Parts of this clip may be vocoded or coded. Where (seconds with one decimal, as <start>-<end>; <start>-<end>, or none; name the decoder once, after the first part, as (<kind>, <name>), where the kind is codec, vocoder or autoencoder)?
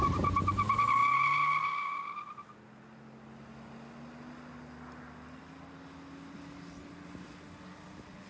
none